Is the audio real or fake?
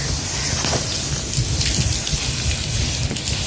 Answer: real